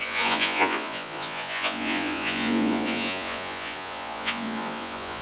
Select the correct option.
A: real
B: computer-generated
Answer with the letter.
B